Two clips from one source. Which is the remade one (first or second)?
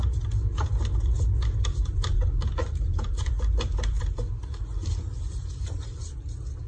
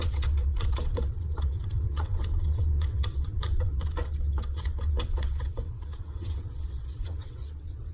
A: second